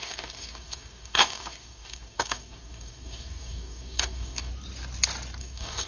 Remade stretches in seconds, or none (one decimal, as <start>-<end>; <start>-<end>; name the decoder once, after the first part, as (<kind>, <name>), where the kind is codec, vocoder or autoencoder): 0.0-4.5 (codec, DAC); 5.4-5.9